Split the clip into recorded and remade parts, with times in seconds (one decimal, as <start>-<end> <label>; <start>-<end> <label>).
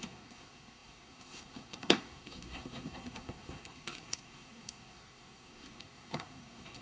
0.0-6.8 remade